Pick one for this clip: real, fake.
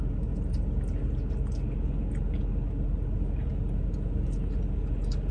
real